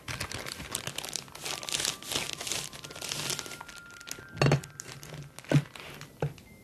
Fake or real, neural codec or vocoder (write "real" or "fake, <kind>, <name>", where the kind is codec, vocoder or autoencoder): real